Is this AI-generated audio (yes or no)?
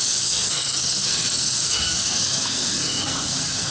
yes